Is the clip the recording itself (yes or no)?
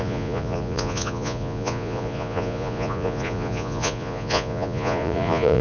no